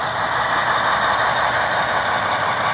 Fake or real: real